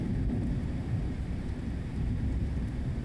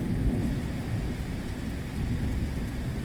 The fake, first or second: first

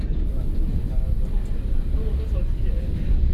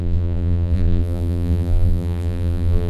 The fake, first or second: second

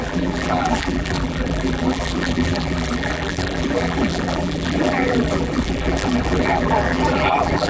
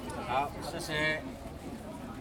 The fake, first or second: first